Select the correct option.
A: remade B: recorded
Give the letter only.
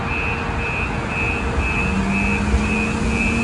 B